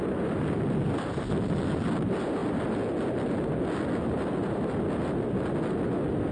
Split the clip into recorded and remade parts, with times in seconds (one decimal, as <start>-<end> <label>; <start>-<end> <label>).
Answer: 0.0-6.3 recorded